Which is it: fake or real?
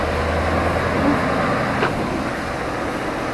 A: real